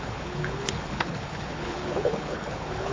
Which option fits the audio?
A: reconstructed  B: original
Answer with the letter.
A